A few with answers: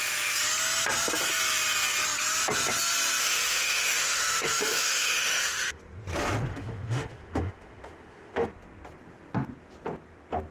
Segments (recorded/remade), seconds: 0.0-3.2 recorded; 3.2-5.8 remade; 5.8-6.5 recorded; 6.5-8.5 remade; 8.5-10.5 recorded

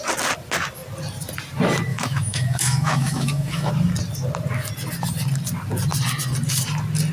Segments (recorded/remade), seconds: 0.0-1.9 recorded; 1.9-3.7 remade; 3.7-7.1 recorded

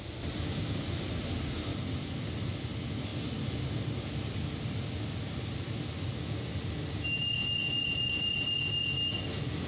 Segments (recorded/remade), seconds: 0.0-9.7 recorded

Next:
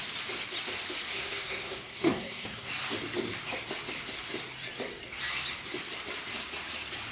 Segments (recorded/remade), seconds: 0.0-1.1 recorded; 1.1-2.7 remade; 2.7-7.1 recorded

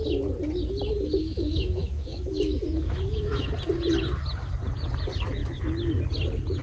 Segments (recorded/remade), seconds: 0.0-1.2 recorded; 1.2-3.5 remade; 3.5-6.6 recorded

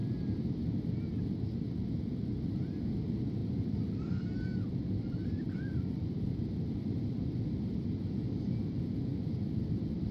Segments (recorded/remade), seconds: 0.0-3.4 recorded; 3.4-7.4 remade; 7.4-9.1 recorded; 9.1-10.1 remade

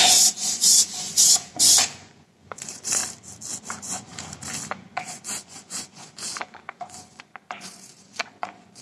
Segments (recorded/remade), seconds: 0.0-3.0 remade; 3.0-3.6 recorded; 3.6-4.1 remade; 4.1-4.8 recorded; 4.8-8.8 remade